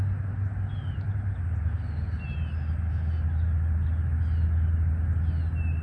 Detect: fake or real real